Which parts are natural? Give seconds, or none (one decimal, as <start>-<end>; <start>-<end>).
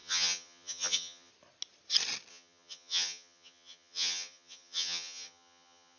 1.3-2.3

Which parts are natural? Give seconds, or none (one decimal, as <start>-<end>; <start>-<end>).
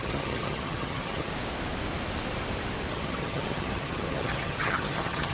1.3-2.9